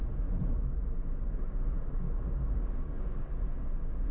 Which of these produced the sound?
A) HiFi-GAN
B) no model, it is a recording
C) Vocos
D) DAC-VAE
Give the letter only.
B